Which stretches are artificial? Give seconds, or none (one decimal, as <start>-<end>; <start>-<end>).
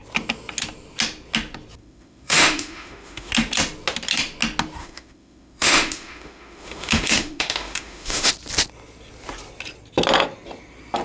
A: 1.8-3.3; 4.8-8.3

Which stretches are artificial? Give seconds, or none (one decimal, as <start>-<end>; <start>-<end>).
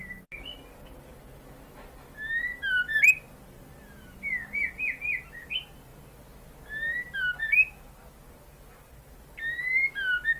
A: none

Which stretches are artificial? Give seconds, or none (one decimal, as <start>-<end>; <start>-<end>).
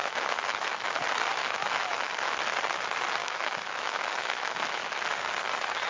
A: 0.0-1.0; 1.4-2.4; 3.2-5.0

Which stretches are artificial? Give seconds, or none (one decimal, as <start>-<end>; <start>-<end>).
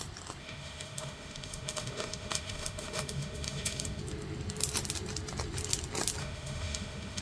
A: 0.4-4.0; 6.2-7.2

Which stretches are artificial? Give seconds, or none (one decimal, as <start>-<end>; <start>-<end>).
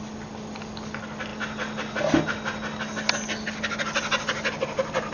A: none